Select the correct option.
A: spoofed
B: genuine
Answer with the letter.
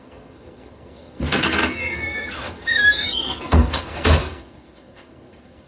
A